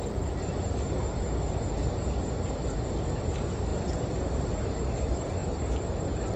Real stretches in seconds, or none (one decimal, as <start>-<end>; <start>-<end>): 0.0-6.4